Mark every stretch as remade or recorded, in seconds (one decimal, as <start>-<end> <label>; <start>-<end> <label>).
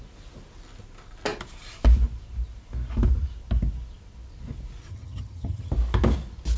0.0-4.9 recorded; 4.9-5.7 remade; 5.7-6.6 recorded